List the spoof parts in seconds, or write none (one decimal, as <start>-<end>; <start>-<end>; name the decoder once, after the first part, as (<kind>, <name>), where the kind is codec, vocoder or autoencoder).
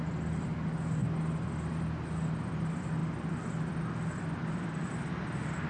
none